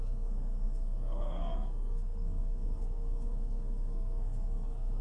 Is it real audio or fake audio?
fake